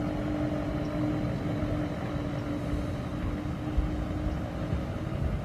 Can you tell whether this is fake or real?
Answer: real